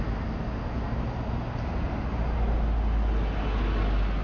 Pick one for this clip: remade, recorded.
recorded